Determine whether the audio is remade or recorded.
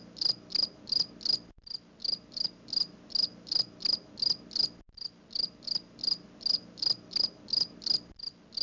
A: recorded